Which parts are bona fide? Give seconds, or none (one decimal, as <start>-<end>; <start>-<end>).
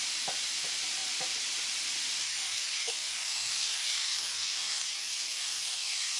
0.0-2.2